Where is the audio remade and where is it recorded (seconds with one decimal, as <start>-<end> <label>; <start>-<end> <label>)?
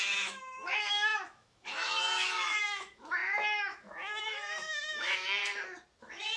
0.0-5.4 remade; 5.4-6.0 recorded; 6.0-6.4 remade